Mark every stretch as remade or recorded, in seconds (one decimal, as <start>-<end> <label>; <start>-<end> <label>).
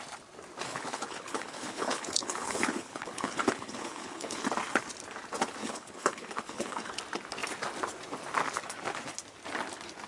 0.0-0.6 recorded; 0.6-4.4 remade; 4.4-5.6 recorded; 5.6-6.9 remade; 6.9-10.1 recorded